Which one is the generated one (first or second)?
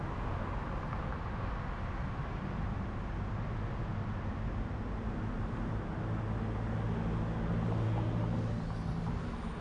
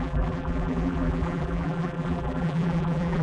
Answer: second